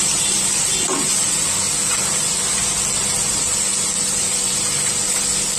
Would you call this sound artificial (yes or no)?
no